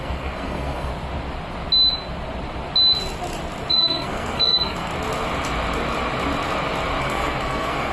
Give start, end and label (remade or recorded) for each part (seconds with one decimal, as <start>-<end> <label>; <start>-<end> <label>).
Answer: 0.0-0.9 remade; 0.9-3.7 recorded; 3.7-4.9 remade; 4.9-7.0 recorded; 7.0-7.9 remade